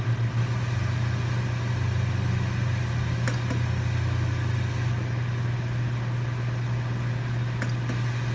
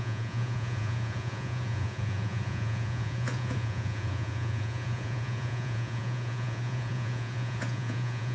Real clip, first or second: first